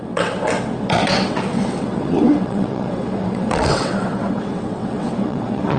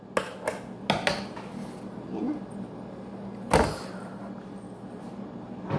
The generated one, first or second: first